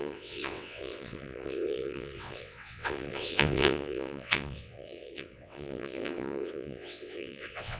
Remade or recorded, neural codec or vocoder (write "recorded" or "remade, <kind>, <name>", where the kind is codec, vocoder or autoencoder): remade, vocoder, WaveNeXt